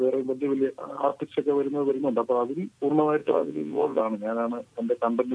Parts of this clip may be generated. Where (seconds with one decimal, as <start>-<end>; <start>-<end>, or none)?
3.2-4.0